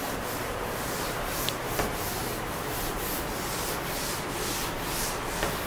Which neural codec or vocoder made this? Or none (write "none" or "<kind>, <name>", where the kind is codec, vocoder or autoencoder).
none